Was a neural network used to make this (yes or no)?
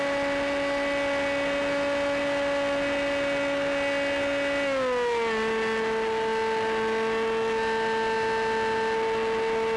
no